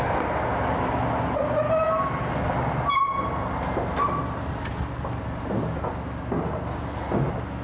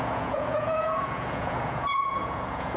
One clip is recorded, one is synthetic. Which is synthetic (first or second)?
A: second